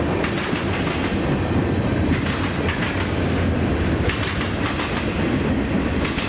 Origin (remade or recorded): recorded